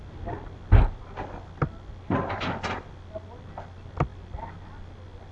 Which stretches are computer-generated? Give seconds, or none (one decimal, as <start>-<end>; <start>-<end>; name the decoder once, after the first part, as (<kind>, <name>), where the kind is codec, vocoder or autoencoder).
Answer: none